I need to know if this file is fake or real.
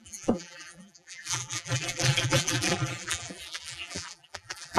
fake